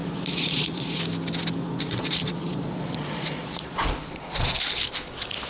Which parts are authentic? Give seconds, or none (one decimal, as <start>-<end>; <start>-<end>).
1.0-1.6; 4.5-5.5

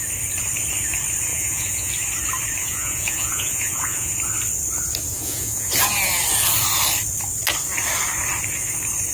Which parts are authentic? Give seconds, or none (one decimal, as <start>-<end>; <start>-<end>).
0.0-1.3; 1.9-2.6; 4.1-5.1; 5.7-9.1

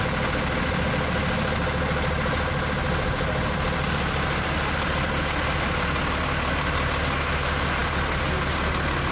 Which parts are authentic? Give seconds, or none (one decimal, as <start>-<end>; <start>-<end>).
0.0-9.1

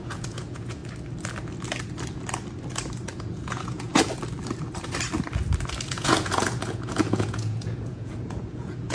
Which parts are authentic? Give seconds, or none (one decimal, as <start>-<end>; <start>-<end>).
0.8-3.2; 3.9-5.9

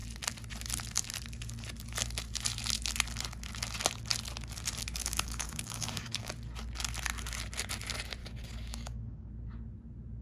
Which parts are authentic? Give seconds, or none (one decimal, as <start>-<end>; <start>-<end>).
0.0-5.0; 6.3-8.2; 9.3-10.2

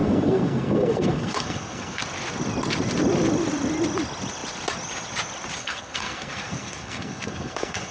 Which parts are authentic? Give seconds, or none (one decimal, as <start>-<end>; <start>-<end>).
2.0-5.6

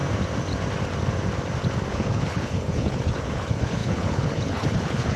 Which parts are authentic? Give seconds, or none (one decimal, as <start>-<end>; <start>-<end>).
0.0-1.9